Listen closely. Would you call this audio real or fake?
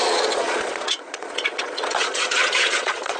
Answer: fake